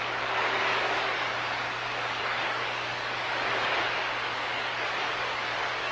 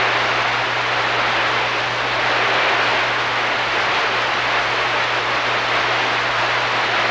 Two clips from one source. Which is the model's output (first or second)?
first